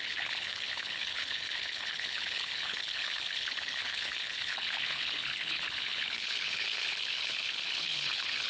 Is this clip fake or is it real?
fake